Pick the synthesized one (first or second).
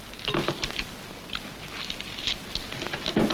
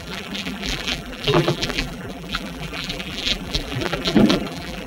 second